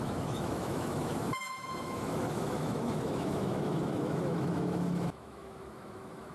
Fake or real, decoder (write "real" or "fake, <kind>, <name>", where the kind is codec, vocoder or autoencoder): fake, autoencoder, DAC-VAE